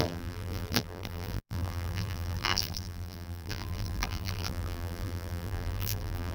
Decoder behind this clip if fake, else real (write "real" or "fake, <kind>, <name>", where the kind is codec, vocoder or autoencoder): fake, vocoder, BigVGAN v2